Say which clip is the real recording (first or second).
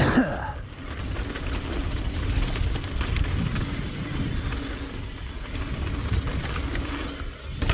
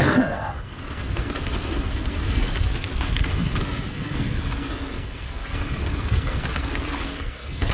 first